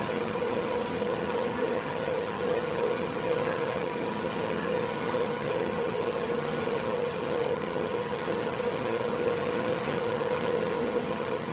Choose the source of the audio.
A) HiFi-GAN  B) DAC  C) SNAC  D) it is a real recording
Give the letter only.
A